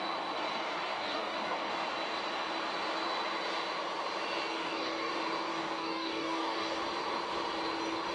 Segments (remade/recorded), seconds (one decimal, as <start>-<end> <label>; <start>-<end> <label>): 0.0-0.9 recorded; 0.9-1.7 remade; 1.7-4.5 recorded; 4.5-5.1 remade; 5.1-5.5 recorded; 5.5-6.8 remade; 6.8-8.1 recorded